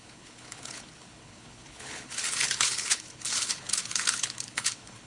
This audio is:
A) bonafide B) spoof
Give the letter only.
B